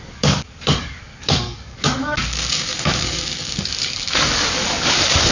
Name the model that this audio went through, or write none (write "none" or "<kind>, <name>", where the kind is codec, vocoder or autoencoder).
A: codec, DAC